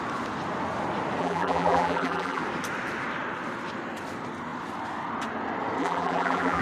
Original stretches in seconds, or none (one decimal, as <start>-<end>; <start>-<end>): 0.0-1.2; 2.4-5.8